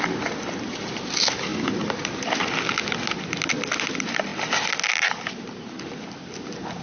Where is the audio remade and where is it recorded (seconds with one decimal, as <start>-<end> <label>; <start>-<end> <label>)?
0.0-6.8 recorded

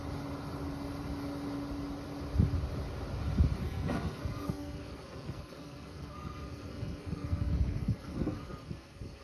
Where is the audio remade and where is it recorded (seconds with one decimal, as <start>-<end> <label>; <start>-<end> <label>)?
0.0-3.6 recorded; 3.6-9.2 remade

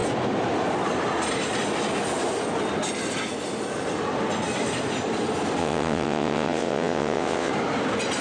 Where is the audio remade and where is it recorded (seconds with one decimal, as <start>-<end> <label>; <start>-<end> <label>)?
0.0-5.6 recorded; 5.6-7.5 remade; 7.5-8.2 recorded

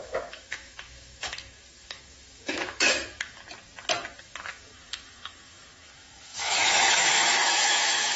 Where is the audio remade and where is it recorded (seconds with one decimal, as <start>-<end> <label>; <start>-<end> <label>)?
0.0-3.4 remade; 3.4-4.2 recorded; 4.2-8.2 remade

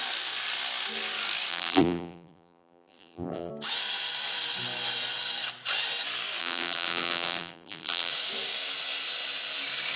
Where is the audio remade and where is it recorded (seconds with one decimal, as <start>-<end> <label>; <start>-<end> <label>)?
0.0-1.5 recorded; 1.5-3.5 remade; 3.5-6.4 recorded; 6.4-8.1 remade; 8.1-10.0 recorded